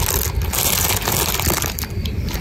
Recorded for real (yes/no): yes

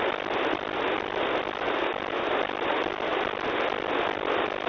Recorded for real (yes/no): yes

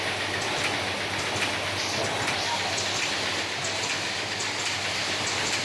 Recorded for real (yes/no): yes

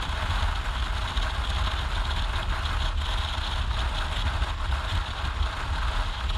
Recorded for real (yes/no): yes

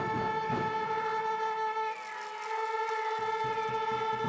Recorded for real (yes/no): yes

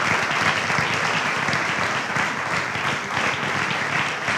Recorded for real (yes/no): yes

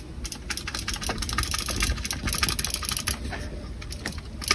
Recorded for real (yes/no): yes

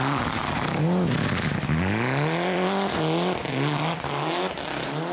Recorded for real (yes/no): yes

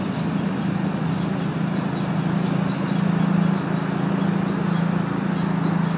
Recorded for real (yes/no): yes